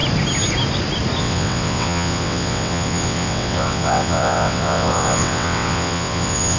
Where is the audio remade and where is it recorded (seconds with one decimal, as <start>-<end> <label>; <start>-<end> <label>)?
0.0-1.2 recorded; 1.2-6.6 remade